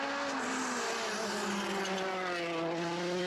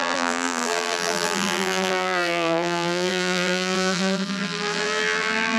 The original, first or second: first